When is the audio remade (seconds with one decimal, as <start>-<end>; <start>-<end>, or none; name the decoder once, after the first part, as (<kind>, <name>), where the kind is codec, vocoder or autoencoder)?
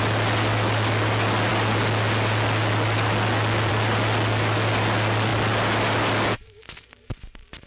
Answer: none